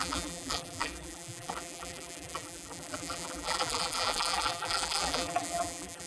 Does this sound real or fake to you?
fake